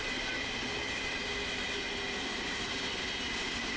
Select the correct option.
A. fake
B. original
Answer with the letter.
B